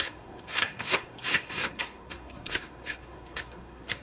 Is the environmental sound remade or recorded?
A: remade